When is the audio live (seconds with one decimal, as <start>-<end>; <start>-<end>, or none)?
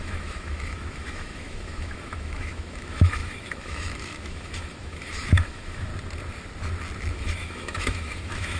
5.9-7.1